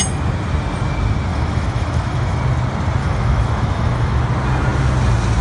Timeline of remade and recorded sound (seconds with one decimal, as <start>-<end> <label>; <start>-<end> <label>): 0.0-1.3 recorded; 1.3-2.4 remade; 2.4-3.0 recorded; 3.0-4.2 remade; 4.2-5.4 recorded